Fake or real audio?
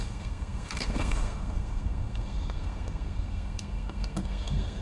fake